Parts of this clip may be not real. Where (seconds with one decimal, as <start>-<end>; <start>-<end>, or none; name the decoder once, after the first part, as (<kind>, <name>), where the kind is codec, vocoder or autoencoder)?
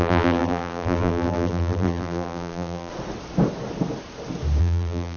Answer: 0.0-2.9 (vocoder, BigVGAN v2); 4.6-5.2